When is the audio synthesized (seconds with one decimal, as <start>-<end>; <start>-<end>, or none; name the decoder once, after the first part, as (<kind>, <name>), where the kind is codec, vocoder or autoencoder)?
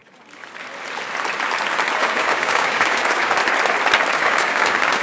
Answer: 2.0-3.4 (codec, DAC); 4.1-5.0